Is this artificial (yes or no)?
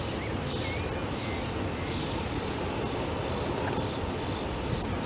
no